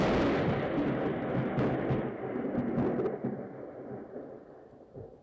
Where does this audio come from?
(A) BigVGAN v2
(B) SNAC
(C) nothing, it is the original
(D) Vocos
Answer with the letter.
C